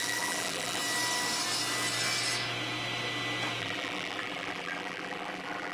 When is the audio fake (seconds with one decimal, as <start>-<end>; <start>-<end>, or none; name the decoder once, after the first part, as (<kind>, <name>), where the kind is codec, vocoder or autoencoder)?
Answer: 0.0-0.8 (vocoder, BigVGAN v2); 3.6-5.7